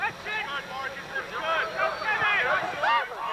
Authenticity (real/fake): real